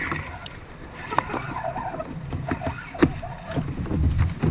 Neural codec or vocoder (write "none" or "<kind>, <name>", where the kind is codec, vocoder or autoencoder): none